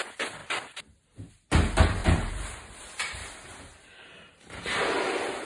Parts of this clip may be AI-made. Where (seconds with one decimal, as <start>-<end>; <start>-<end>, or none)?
2.0-4.8